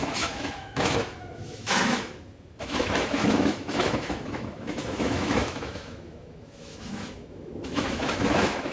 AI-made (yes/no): yes